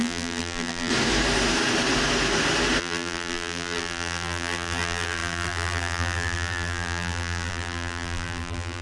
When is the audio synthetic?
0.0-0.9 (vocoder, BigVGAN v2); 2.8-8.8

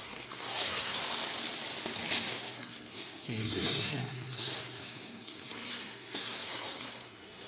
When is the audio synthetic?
0.0-1.0 (codec, SNAC); 2.3-7.5

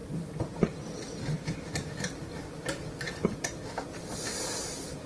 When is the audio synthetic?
none

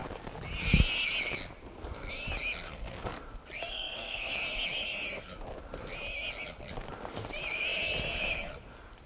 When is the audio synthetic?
3.7-4.3 (codec, SNAC)